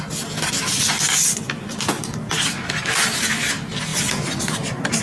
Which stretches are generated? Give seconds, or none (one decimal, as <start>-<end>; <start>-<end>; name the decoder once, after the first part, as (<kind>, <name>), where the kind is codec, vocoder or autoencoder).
none